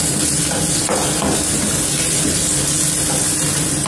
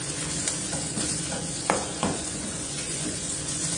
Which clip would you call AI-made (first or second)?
second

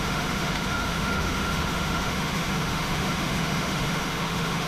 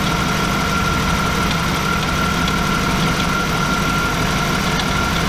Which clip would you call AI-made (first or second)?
first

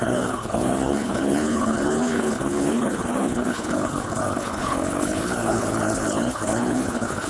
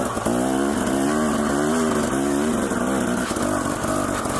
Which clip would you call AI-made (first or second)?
first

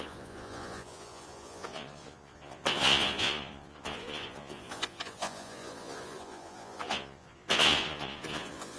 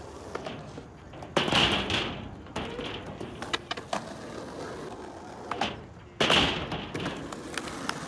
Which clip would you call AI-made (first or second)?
first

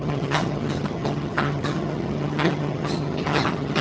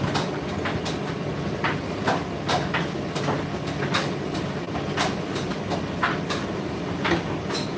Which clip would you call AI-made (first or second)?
first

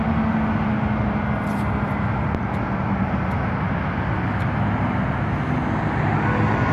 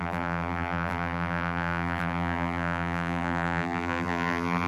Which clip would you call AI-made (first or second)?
second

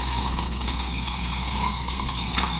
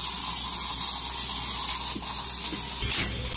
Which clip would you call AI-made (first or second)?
first